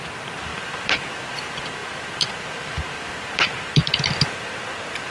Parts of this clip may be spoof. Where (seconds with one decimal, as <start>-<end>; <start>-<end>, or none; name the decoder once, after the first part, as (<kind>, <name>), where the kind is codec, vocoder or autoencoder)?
none